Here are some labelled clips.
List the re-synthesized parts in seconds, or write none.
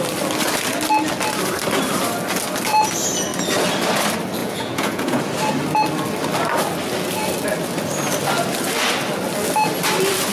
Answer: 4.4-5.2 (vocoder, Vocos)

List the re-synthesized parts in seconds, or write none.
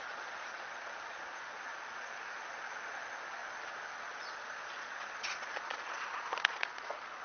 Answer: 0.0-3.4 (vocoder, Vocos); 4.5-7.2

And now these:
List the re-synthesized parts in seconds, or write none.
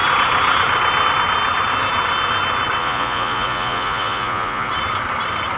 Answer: 2.8-4.7 (vocoder, Vocos)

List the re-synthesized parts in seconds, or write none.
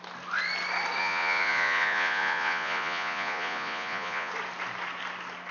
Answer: 1.0-4.3 (vocoder, Vocos)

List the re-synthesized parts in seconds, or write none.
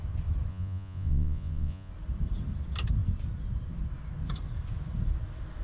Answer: 0.5-1.9 (vocoder, Vocos)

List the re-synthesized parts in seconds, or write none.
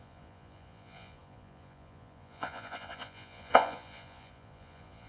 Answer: 0.0-5.1 (vocoder, Vocos)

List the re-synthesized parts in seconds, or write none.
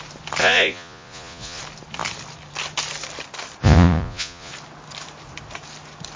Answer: 0.4-1.6 (vocoder, Vocos); 3.6-4.5